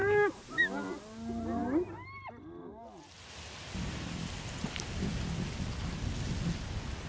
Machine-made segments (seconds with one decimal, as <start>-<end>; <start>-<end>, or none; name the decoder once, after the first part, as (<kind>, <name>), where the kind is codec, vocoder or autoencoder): 0.0-0.6 (vocoder, BigVGAN v2)